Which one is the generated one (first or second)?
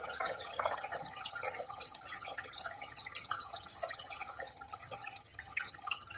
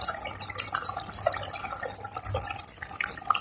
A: first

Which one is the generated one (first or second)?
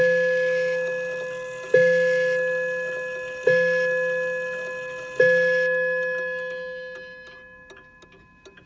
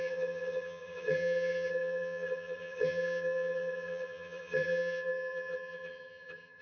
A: second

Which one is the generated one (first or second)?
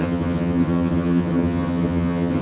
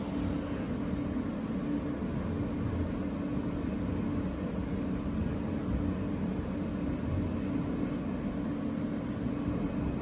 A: first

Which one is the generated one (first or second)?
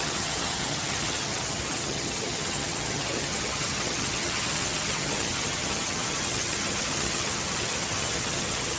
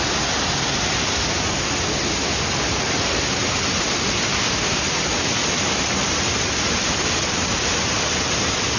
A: first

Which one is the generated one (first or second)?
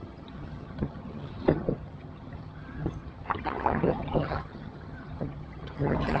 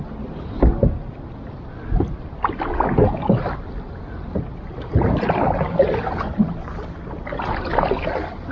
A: first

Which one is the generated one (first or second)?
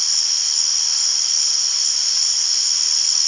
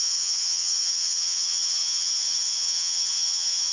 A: second